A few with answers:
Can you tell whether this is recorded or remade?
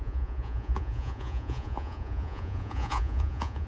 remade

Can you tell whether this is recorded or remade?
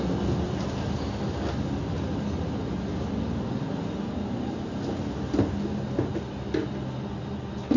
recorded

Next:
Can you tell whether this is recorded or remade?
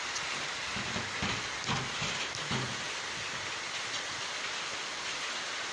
recorded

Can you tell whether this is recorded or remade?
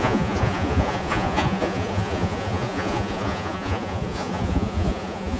remade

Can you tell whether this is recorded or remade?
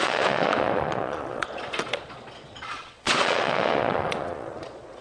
remade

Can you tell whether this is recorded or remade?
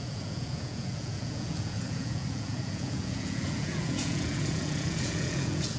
remade